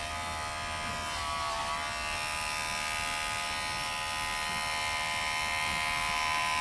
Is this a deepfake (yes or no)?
no